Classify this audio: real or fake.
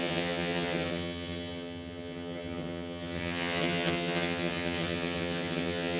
fake